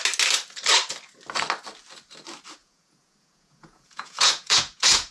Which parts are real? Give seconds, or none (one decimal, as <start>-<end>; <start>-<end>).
0.0-2.6